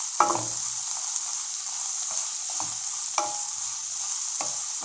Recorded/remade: recorded